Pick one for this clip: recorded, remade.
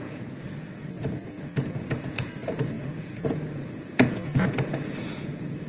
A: remade